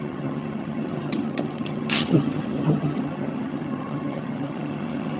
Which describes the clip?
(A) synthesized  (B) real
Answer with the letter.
A